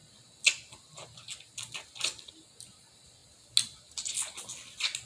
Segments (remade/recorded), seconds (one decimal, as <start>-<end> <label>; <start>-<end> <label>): 0.0-5.1 recorded